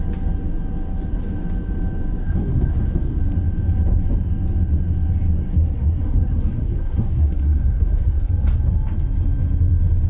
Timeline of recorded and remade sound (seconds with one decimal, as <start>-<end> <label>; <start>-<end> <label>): 0.0-2.2 recorded; 2.2-3.2 remade; 3.2-5.5 recorded; 5.5-8.3 remade; 8.3-10.1 recorded